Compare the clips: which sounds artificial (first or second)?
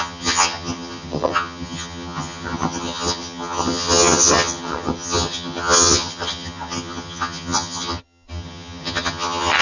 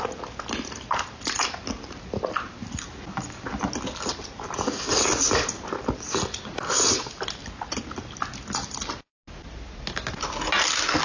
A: first